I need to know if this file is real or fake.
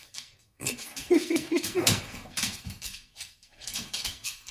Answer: fake